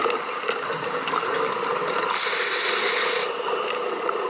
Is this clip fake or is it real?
real